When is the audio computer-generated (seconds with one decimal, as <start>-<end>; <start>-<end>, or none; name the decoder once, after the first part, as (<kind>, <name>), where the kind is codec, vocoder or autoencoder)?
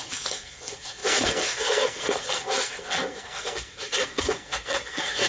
0.0-5.3 (codec, SNAC)